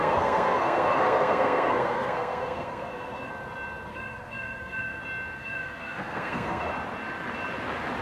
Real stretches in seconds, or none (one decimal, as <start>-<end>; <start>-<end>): 3.3-3.9; 5.0-5.4; 6.7-8.0